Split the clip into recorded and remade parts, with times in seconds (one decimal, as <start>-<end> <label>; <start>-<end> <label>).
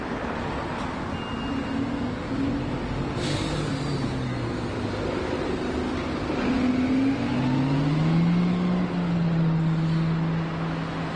0.0-11.2 recorded